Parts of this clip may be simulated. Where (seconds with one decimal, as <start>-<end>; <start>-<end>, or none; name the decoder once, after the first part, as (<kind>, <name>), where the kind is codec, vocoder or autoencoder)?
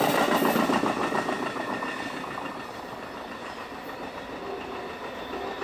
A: 1.0-1.7 (vocoder, BigVGAN v2)